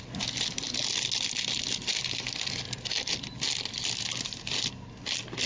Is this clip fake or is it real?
real